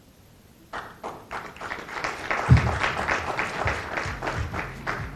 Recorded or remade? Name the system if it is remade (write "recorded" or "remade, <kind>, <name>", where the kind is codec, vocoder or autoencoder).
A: remade, vocoder, BigVGAN v2